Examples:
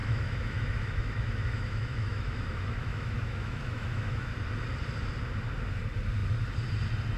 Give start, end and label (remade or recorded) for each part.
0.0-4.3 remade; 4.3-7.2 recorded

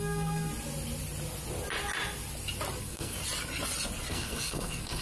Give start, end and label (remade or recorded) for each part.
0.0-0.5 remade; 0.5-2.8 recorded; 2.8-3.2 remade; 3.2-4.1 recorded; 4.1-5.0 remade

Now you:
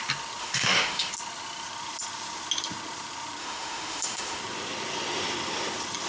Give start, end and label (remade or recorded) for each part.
0.0-0.4 recorded; 0.4-1.1 remade; 1.1-3.4 recorded; 3.4-4.4 remade; 4.4-6.1 recorded

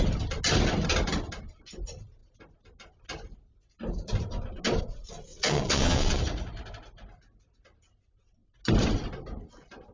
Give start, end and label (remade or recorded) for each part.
0.0-5.3 recorded; 5.3-6.2 remade; 6.2-9.9 recorded

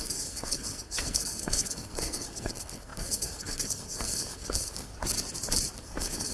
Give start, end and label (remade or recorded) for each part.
0.0-4.9 remade; 4.9-5.8 recorded; 5.8-6.3 remade